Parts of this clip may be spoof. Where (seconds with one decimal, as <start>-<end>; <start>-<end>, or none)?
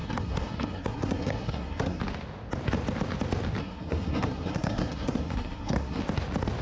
0.0-2.0; 3.6-6.0